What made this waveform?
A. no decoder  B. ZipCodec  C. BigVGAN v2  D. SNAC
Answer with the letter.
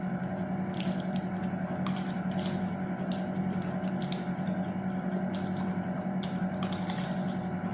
A